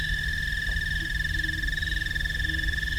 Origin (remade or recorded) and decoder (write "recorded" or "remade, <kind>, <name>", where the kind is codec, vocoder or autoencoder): recorded